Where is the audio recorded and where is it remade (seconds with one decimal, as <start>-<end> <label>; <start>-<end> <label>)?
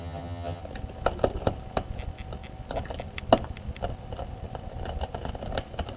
0.0-0.6 remade; 0.6-6.0 recorded